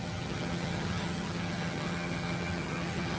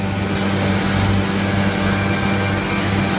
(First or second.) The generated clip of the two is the first